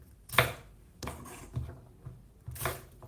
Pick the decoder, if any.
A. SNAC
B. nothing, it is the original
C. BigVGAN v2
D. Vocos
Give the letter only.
B